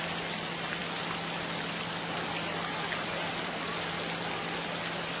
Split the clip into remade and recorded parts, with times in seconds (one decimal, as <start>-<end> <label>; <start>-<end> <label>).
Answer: 0.0-5.2 recorded